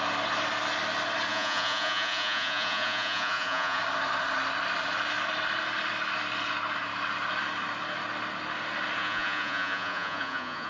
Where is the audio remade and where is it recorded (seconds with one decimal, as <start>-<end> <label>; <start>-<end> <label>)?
0.0-1.3 recorded; 1.3-3.8 remade; 3.8-9.0 recorded; 9.0-10.7 remade